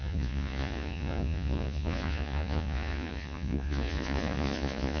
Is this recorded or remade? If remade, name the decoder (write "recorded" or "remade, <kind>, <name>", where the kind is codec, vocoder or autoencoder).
remade, vocoder, Vocos